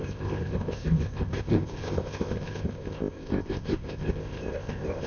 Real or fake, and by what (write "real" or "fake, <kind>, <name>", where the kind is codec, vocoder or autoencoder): fake, codec, ZipCodec